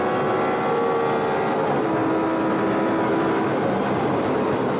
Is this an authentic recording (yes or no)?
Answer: yes